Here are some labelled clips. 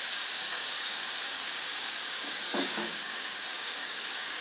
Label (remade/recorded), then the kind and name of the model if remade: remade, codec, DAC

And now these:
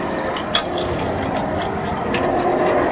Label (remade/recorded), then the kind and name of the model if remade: recorded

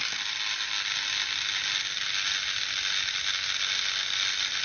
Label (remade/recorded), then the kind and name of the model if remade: recorded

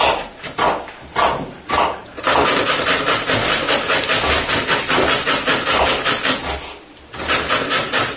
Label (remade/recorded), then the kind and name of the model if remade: recorded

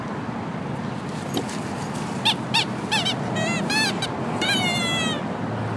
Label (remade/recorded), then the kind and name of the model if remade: recorded